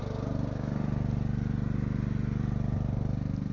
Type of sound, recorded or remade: recorded